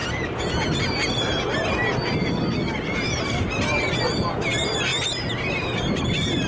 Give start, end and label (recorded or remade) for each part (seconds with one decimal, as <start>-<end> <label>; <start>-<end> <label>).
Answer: 0.0-4.9 recorded; 4.9-6.1 remade; 6.1-6.5 recorded